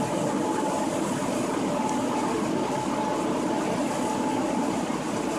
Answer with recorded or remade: recorded